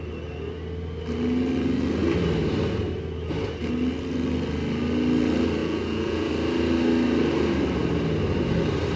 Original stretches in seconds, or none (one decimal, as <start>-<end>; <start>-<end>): 0.0-5.6; 6.3-9.0

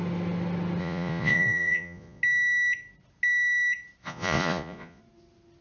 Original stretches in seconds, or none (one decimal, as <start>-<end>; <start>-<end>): 0.0-0.8; 2.2-4.0; 5.0-5.6

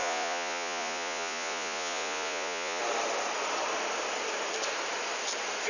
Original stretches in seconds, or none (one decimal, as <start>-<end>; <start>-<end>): 2.8-5.7

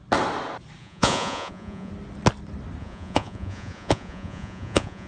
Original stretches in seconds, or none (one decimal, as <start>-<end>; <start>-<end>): 0.0-0.8; 1.9-2.8

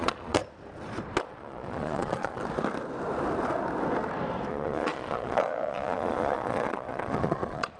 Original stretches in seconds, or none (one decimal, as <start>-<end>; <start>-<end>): 0.4-1.2; 2.4-4.5

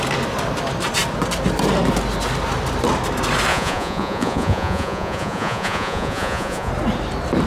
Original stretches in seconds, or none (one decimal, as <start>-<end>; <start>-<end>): 0.0-3.5; 6.7-7.5

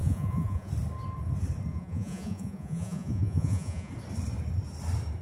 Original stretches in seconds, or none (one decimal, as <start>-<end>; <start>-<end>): 0.7-1.7; 3.9-5.2

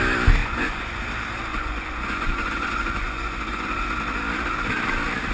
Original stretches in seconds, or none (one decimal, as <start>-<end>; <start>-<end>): 0.0-0.4; 1.0-1.5; 3.7-5.3